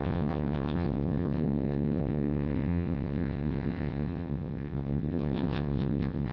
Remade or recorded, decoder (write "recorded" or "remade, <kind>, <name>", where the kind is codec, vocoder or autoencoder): remade, vocoder, WaveNeXt